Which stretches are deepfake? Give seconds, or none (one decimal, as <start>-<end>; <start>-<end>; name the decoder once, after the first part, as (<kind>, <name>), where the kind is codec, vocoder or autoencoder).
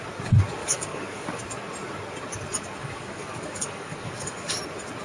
0.6-1.4 (codec, DAC); 2.8-4.6